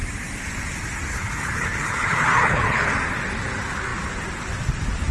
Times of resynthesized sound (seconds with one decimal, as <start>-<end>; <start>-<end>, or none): 1.1-2.9